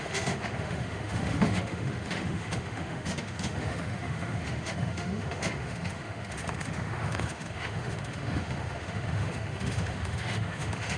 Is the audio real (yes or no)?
no